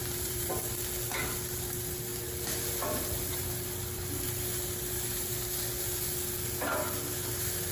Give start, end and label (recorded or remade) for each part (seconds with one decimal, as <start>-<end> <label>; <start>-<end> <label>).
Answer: 0.0-0.5 remade; 0.5-7.7 recorded